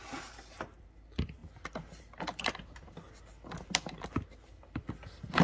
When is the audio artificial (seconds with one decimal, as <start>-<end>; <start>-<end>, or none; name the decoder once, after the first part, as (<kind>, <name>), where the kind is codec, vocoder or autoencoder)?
none